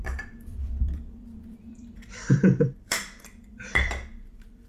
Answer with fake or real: fake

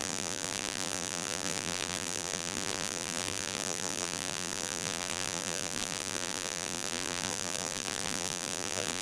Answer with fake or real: fake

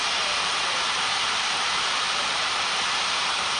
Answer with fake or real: fake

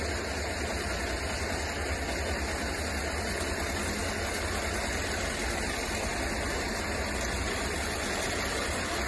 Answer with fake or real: real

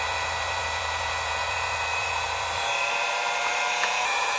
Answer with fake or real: fake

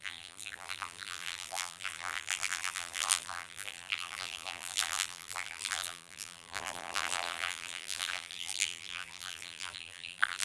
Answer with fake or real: fake